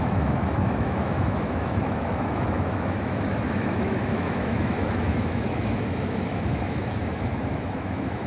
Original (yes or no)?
no